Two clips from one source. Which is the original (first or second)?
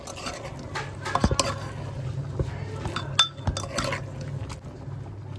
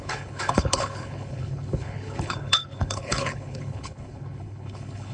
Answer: first